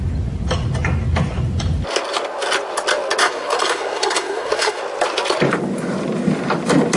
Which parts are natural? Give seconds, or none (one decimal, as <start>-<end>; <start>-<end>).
0.0-3.2; 4.8-7.0